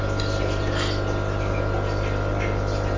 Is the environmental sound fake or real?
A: real